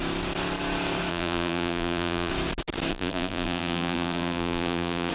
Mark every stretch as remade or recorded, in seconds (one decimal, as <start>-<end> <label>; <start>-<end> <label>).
0.0-1.1 recorded; 1.1-2.3 remade; 2.3-2.9 recorded; 2.9-5.1 remade